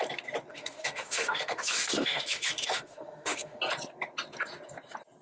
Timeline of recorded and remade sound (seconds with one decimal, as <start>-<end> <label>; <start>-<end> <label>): 0.0-0.5 recorded; 0.5-3.6 remade; 3.6-5.2 recorded